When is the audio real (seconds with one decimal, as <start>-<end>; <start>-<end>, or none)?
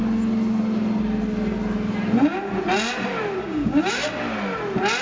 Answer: 0.0-3.4; 3.9-5.0